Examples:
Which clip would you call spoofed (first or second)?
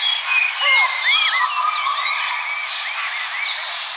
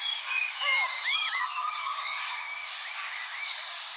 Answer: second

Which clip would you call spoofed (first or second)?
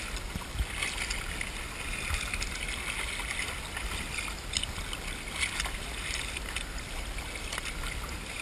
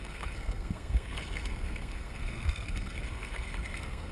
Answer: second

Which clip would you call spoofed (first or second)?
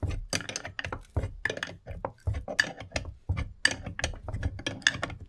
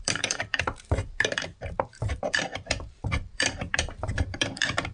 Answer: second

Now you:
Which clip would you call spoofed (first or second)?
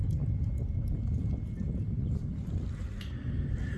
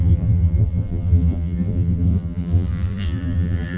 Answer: second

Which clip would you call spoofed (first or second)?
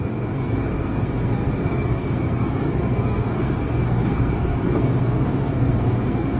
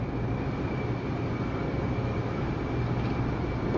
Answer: first